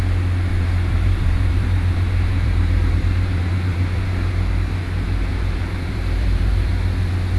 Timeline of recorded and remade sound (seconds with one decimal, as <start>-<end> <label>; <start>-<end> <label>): 0.0-0.5 recorded; 0.5-4.3 remade; 4.3-5.3 recorded; 5.3-6.7 remade; 6.7-7.4 recorded